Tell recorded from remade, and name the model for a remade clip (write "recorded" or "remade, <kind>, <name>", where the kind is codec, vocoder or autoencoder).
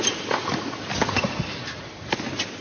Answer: recorded